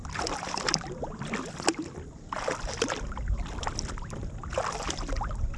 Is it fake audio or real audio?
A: real